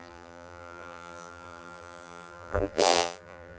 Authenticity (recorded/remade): remade